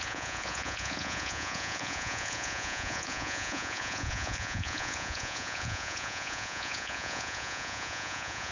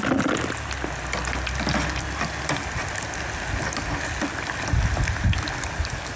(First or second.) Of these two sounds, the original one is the second